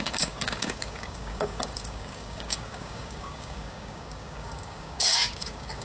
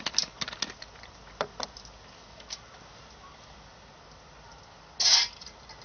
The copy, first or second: first